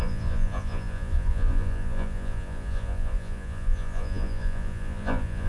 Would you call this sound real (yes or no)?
no